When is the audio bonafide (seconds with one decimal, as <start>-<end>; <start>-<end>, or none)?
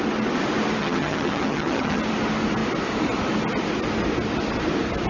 0.0-0.8; 2.0-5.1